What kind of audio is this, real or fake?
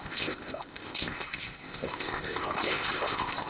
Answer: fake